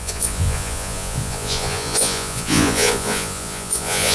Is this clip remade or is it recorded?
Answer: remade